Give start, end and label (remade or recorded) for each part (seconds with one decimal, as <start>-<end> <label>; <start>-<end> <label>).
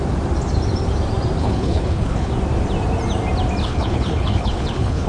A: 0.0-1.4 recorded; 1.4-2.3 remade; 2.3-3.6 recorded; 3.6-5.1 remade